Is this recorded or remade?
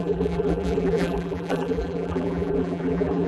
remade